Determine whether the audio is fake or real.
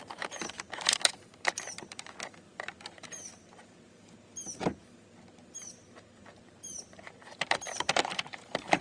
fake